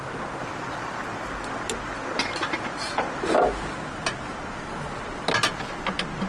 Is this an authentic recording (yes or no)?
yes